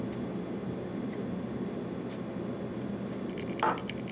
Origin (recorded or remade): recorded